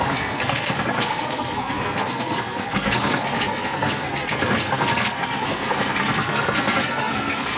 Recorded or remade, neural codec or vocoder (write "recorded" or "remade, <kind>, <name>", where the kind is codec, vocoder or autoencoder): remade, codec, SNAC